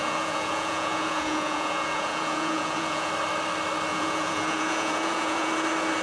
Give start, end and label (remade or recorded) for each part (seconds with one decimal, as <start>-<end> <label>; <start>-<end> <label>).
0.0-3.1 remade; 3.1-3.9 recorded; 3.9-5.5 remade; 5.5-6.0 recorded